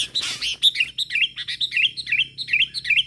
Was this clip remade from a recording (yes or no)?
no